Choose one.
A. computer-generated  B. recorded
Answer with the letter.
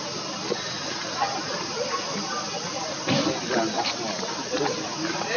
B